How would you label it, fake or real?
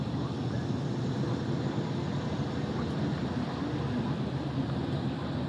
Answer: real